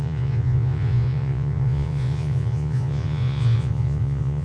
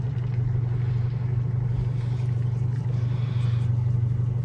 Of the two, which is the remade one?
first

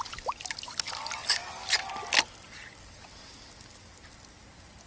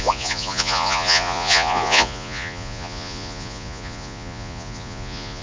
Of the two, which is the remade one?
second